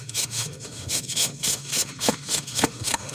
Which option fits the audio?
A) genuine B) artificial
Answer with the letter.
B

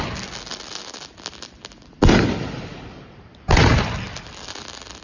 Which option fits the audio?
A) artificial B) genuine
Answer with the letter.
B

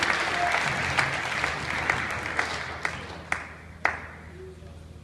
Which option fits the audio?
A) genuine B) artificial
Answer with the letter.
A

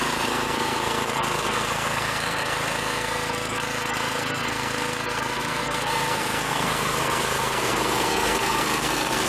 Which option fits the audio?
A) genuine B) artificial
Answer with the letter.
B